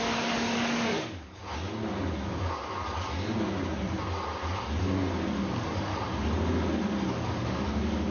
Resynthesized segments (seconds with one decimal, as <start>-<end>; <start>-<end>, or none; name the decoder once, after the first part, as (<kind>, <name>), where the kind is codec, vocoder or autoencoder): 0.0-1.4 (codec, DAC); 4.8-5.9; 7.1-8.1